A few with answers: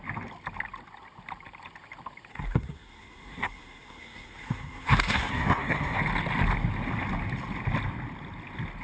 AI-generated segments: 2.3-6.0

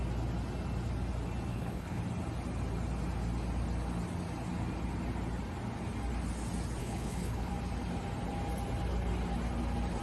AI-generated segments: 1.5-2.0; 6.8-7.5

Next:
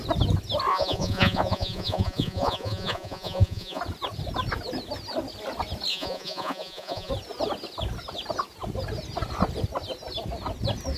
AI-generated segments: 0.7-3.8; 5.9-7.1